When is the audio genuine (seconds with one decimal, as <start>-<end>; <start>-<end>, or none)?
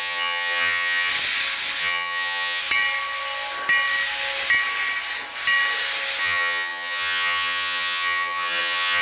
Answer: 1.1-1.8; 2.6-6.2